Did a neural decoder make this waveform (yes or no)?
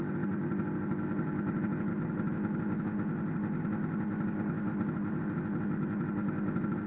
no